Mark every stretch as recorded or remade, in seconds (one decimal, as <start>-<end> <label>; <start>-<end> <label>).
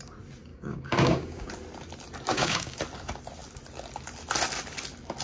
0.0-0.5 recorded; 0.5-1.5 remade; 1.5-2.3 recorded; 2.3-2.8 remade; 2.8-5.2 recorded